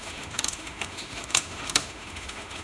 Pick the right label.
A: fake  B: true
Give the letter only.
A